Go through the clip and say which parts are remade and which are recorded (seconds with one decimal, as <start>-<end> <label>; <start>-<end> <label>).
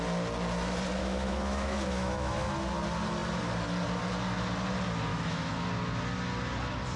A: 0.0-1.0 recorded; 1.0-2.5 remade; 2.5-5.1 recorded; 5.1-5.6 remade; 5.6-7.0 recorded